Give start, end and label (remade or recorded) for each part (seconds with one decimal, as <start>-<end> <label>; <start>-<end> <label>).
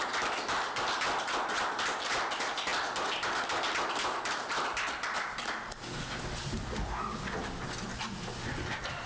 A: 0.0-9.1 recorded